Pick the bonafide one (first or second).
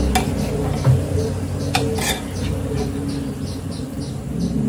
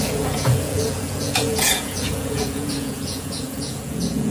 first